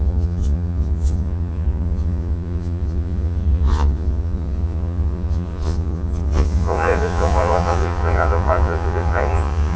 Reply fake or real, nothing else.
fake